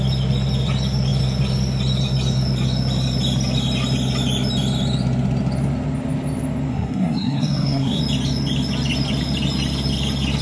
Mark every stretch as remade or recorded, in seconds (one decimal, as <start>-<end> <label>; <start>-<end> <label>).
0.0-6.7 recorded; 6.7-8.0 remade; 8.0-10.4 recorded